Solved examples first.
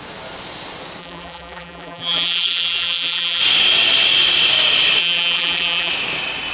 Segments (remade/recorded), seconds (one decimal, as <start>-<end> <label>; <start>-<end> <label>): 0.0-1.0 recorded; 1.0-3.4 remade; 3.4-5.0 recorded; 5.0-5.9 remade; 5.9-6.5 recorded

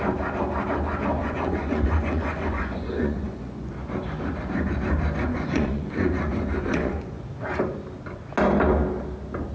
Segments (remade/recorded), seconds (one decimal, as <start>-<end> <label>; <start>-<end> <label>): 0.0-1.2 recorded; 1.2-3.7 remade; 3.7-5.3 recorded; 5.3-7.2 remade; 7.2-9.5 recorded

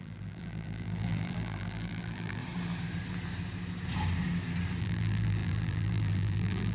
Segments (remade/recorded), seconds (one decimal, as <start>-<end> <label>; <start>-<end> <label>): 0.0-2.4 remade; 2.4-4.8 recorded; 4.8-6.7 remade

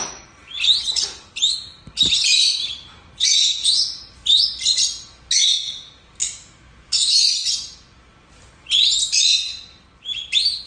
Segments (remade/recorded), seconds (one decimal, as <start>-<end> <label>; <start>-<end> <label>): 0.0-6.2 recorded; 6.2-7.3 remade; 7.3-10.7 recorded